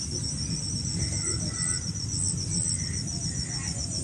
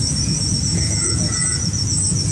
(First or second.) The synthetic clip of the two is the second